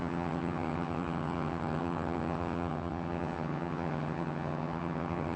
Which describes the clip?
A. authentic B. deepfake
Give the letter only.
B